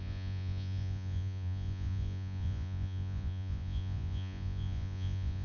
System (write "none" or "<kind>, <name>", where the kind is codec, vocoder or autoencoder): vocoder, Vocos